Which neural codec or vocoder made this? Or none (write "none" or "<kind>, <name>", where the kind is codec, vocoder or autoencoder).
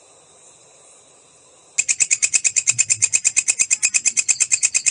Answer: none